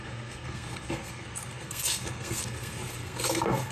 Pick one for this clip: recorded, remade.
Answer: remade